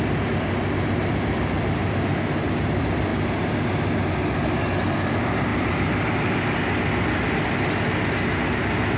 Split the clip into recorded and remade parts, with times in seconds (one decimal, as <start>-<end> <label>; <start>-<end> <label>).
0.0-9.0 recorded